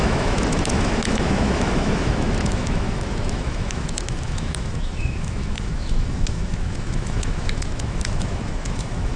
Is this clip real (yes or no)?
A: no